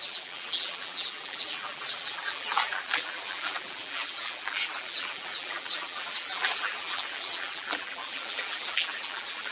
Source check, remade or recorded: remade